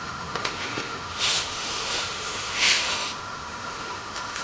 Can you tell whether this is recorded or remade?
remade